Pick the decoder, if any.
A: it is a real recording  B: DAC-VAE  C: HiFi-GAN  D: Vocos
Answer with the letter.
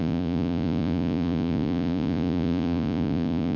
D